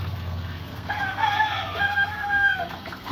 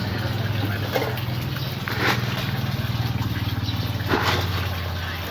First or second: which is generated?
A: first